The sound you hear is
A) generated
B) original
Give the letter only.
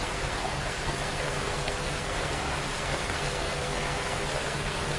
A